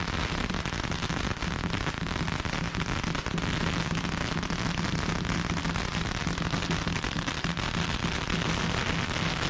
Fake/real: real